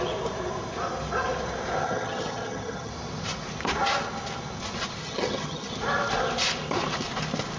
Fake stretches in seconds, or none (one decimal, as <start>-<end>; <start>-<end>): 1.8-2.9; 5.0-5.7